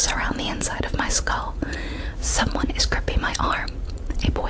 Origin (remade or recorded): remade